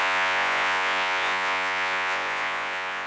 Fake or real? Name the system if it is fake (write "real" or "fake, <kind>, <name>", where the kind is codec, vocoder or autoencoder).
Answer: fake, vocoder, Vocos